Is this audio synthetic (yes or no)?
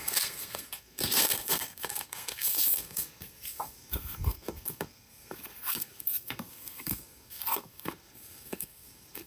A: yes